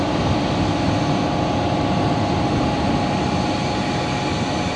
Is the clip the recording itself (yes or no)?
yes